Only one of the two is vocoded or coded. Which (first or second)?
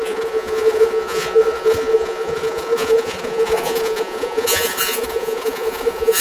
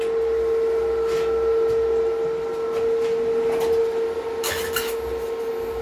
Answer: first